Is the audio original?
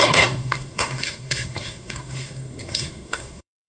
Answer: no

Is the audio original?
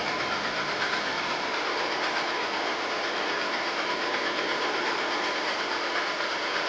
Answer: yes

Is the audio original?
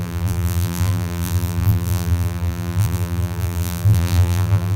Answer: no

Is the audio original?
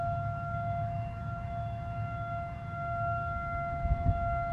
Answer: no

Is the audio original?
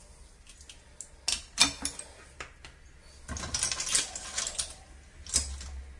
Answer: yes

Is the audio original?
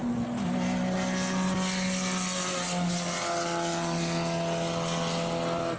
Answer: yes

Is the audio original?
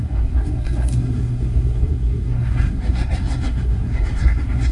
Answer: no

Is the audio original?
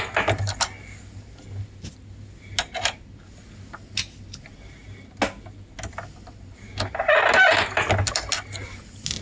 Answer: yes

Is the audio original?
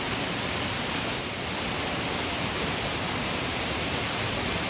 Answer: yes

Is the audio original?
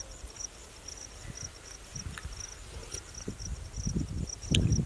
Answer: yes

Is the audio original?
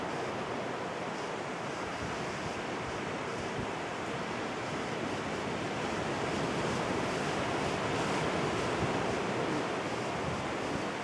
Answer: yes